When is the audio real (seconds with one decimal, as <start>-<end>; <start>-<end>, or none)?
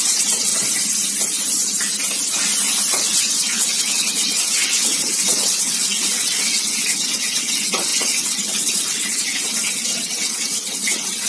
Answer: 0.5-2.9